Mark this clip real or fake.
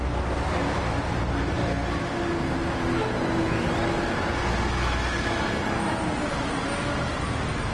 real